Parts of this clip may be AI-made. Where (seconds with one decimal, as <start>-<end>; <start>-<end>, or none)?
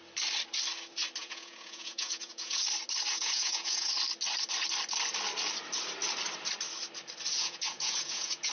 1.2-2.6; 3.1-3.9; 7.3-8.5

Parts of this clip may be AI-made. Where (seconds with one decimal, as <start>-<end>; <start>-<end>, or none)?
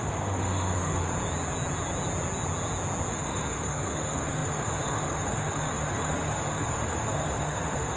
0.0-1.1; 3.1-8.0